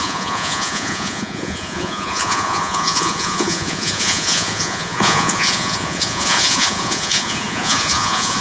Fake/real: fake